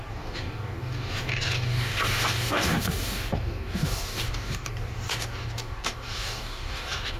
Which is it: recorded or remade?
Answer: remade